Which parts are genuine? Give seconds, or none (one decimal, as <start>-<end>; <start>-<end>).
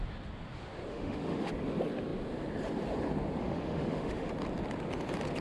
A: 0.0-0.9; 1.5-3.4; 4.3-5.4